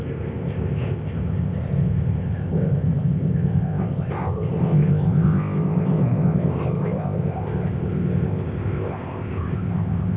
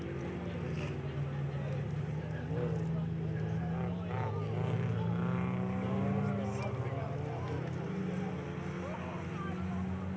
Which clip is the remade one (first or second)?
first